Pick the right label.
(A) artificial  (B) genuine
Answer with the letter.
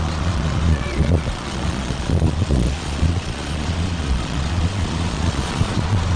A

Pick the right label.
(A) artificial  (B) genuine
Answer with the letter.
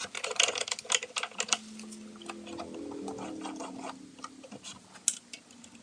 B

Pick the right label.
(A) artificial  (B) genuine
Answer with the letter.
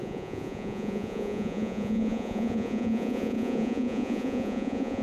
A